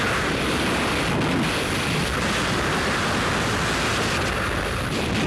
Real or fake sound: real